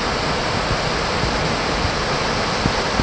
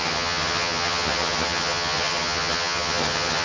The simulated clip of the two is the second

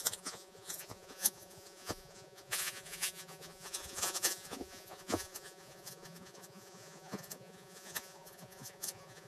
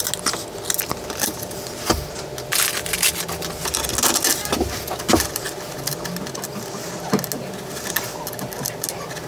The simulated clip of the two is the first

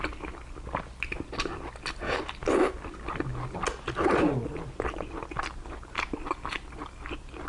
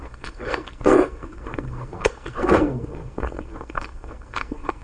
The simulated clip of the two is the second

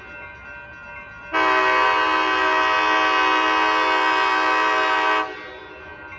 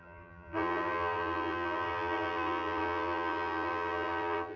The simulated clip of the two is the second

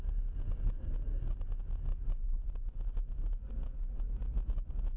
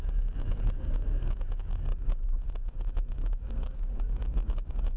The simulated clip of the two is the second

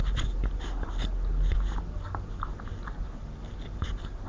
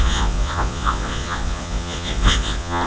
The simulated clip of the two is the second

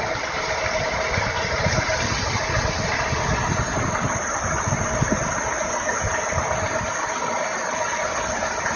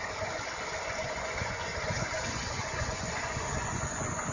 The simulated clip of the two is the second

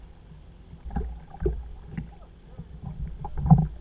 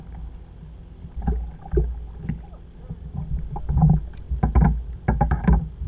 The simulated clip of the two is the first